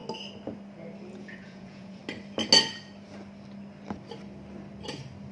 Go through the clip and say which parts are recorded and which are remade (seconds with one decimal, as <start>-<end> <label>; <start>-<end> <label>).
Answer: 0.0-1.1 recorded; 1.1-2.0 remade; 2.0-5.3 recorded